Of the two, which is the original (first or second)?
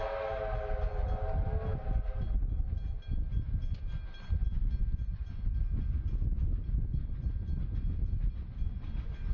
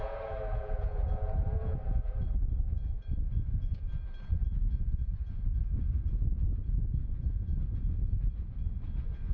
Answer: first